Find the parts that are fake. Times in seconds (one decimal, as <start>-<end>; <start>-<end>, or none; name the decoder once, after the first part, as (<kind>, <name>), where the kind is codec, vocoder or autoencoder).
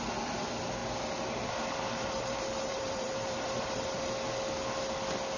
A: 0.8-4.0 (vocoder, BigVGAN v2)